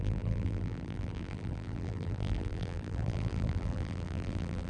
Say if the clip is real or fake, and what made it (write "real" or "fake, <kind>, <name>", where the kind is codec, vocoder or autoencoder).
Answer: fake, vocoder, BigVGAN v2